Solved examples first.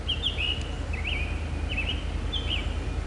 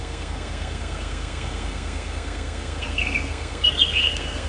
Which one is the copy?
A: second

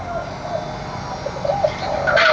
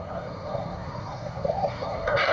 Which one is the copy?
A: second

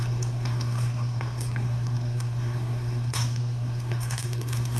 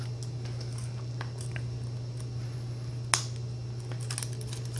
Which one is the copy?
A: first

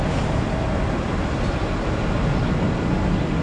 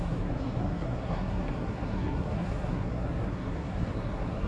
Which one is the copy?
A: second